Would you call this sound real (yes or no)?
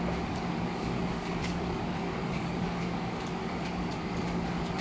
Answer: no